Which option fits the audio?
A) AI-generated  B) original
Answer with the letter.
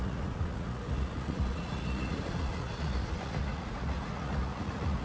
A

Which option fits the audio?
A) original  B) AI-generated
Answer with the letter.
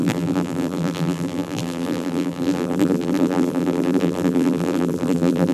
B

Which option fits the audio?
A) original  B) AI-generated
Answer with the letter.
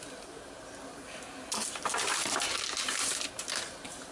A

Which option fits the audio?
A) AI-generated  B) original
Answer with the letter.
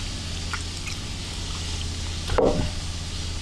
B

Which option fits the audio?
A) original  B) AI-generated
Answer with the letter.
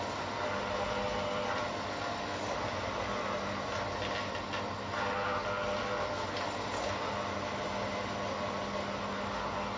A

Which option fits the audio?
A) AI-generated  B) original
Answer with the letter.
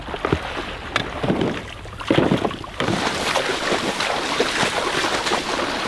B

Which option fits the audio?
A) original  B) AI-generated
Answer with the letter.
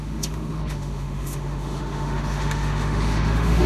B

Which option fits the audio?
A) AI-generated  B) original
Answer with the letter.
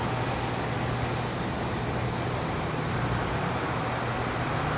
B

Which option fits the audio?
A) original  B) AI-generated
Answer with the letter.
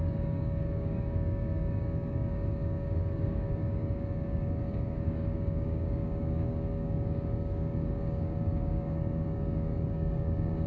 B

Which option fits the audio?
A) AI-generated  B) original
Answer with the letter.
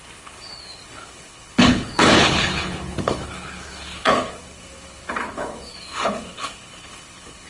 A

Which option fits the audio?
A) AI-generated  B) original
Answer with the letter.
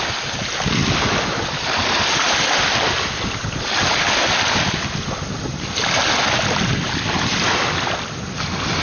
B